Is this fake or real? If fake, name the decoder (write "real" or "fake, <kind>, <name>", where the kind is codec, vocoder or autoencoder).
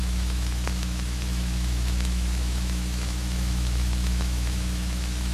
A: fake, autoencoder, DAC-VAE